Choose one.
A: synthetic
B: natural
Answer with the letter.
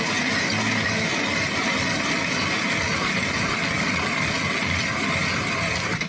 B